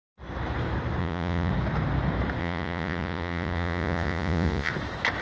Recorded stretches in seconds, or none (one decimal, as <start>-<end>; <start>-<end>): 0.0-1.0; 1.5-2.4; 4.7-5.2